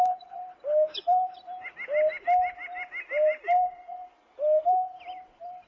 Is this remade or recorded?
recorded